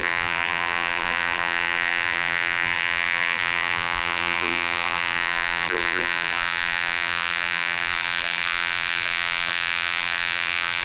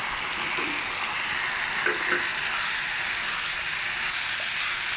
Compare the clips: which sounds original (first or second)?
second